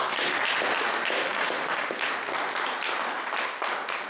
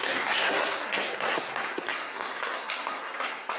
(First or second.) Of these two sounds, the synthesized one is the second